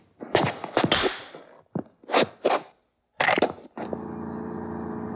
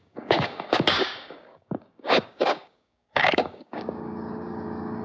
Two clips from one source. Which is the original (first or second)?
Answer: first